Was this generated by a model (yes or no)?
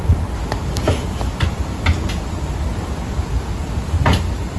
no